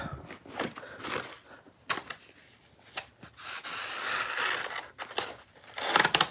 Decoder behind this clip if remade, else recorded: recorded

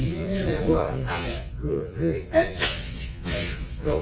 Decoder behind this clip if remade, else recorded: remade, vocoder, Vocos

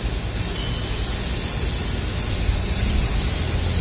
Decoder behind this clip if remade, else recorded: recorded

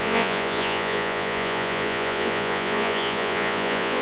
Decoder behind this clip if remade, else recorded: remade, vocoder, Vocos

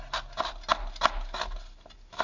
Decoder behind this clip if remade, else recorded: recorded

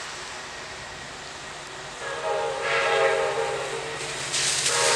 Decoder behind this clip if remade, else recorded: recorded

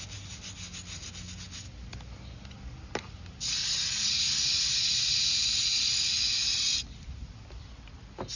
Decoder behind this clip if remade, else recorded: recorded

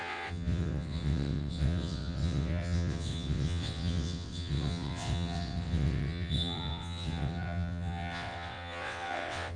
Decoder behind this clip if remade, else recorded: remade, vocoder, WaveNeXt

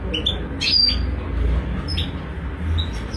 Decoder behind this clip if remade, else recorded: recorded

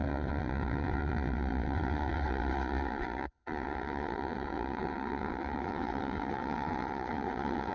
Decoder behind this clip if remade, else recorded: remade, vocoder, WaveNeXt